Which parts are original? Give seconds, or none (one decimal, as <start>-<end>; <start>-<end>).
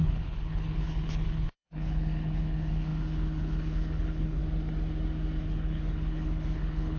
4.4-5.4